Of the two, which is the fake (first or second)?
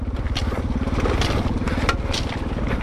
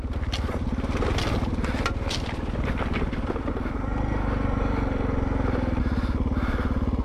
first